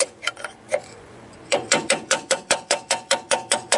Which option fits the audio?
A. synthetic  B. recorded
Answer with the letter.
A